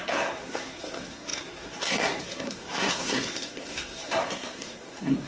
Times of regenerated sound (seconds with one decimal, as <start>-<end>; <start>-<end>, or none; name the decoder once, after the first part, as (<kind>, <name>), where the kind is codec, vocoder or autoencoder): 0.0-5.3 (codec, SNAC)